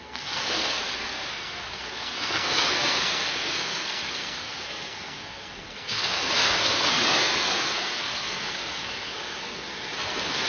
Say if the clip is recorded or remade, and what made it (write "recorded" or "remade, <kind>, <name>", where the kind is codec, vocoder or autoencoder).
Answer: remade, codec, SNAC